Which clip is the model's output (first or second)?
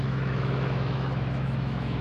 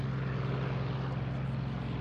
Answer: first